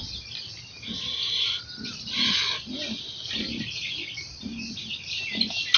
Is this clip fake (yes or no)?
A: no